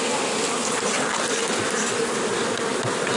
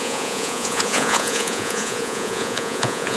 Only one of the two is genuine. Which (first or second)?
first